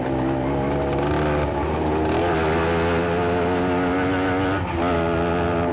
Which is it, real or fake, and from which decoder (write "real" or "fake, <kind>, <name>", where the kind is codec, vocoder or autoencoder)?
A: real